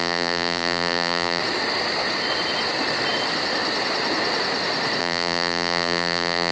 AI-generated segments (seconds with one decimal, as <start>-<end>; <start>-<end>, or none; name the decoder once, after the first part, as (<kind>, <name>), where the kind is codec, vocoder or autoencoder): 0.0-1.4 (vocoder, BigVGAN v2); 5.0-6.5